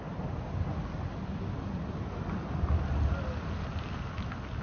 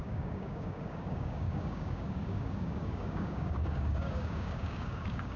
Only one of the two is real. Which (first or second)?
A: first